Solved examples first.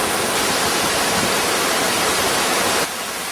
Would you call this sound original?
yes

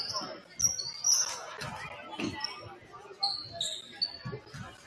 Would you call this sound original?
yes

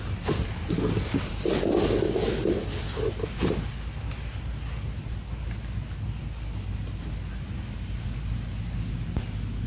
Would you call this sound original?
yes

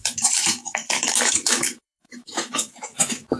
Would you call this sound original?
no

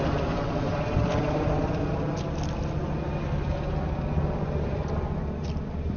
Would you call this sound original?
yes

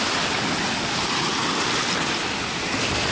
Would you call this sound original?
yes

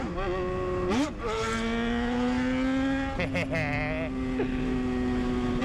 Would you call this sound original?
yes